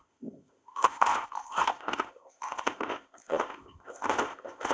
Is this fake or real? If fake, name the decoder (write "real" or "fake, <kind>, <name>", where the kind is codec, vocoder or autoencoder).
fake, codec, ZipCodec